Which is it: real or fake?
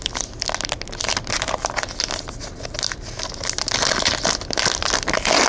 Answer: real